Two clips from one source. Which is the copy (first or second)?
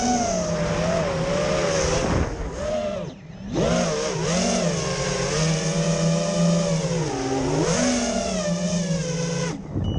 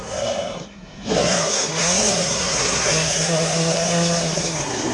second